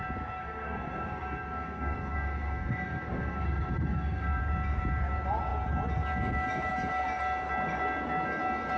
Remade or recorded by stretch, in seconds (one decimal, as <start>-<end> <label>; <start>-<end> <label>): 0.0-0.4 recorded; 0.4-4.4 remade; 4.4-8.8 recorded